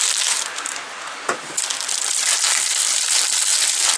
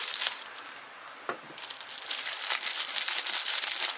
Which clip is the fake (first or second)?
second